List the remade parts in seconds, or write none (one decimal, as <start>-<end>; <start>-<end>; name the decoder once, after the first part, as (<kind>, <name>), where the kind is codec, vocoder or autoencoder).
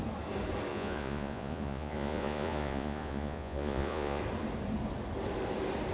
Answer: 0.7-4.2 (vocoder, Vocos)